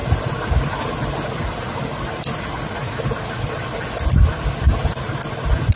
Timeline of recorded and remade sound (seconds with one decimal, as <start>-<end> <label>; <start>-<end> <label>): 0.0-5.8 recorded